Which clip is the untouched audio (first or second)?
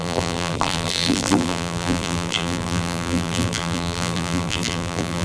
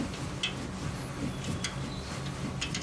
second